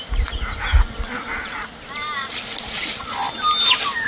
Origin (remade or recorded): recorded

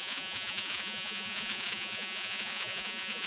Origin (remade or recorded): remade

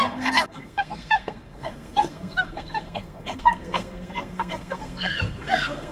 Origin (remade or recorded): remade